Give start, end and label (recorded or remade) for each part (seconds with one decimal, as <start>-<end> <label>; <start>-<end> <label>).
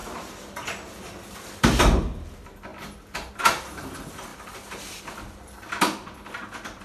0.0-1.8 remade; 1.8-4.3 recorded; 4.3-5.0 remade; 5.0-6.8 recorded